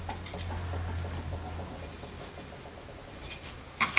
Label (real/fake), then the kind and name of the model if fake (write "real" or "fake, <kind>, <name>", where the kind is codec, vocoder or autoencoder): real